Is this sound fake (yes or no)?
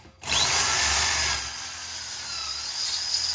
no